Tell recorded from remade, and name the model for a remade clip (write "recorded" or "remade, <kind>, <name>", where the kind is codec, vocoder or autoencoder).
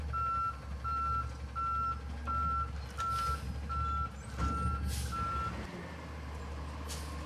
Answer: recorded